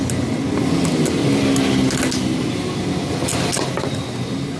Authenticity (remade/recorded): recorded